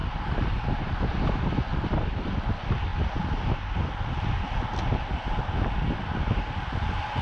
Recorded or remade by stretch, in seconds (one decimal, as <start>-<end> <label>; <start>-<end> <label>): 0.0-7.2 recorded